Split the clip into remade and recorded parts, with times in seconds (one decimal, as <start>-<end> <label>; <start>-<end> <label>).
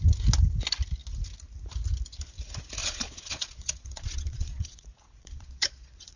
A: 0.0-2.8 recorded; 2.8-6.2 remade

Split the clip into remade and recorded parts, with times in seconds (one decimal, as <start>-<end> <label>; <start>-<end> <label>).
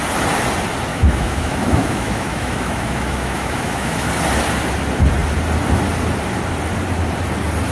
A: 0.0-0.9 recorded; 0.9-4.1 remade; 4.1-7.7 recorded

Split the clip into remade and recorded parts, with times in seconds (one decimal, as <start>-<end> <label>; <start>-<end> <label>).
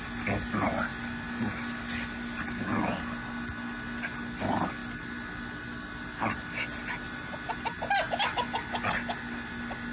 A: 0.0-9.9 recorded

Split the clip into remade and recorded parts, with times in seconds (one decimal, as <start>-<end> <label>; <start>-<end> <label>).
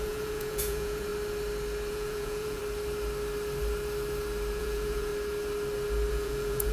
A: 0.0-1.1 remade; 1.1-1.9 recorded; 1.9-2.6 remade; 2.6-4.6 recorded; 4.6-5.1 remade; 5.1-6.1 recorded; 6.1-6.7 remade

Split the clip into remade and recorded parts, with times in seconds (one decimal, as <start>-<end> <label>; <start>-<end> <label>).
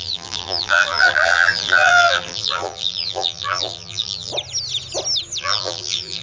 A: 0.0-4.3 remade; 4.3-5.4 recorded; 5.4-6.2 remade